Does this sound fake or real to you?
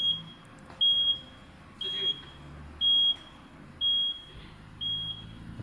real